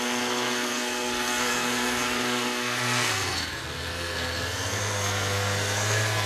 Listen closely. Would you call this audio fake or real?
fake